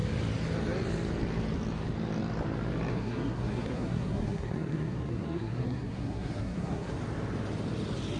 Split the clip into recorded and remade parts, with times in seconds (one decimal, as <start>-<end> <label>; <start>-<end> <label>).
0.0-2.9 recorded; 2.9-6.9 remade; 6.9-8.2 recorded